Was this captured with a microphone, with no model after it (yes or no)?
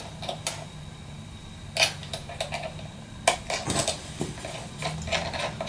yes